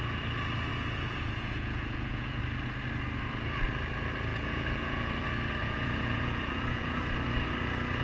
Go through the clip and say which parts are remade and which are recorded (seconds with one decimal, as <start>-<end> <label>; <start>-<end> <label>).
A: 0.0-0.7 recorded; 0.7-2.4 remade; 2.4-4.3 recorded; 4.3-5.1 remade; 5.1-5.6 recorded; 5.6-7.0 remade; 7.0-8.0 recorded